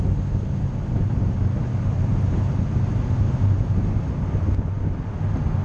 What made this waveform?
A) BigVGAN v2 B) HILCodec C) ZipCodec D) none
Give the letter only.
D